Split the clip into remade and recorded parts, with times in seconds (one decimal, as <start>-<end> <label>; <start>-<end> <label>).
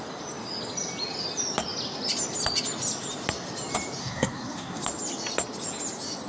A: 0.0-4.0 recorded; 4.0-4.8 remade; 4.8-6.3 recorded